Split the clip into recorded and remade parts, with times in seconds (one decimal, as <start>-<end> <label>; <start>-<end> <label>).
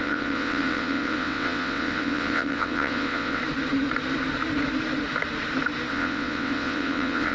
0.0-3.4 remade; 3.4-5.9 recorded; 5.9-7.3 remade